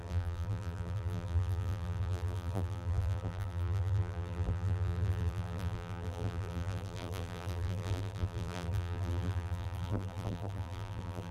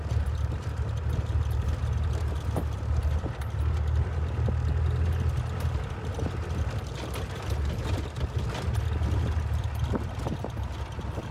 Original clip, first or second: second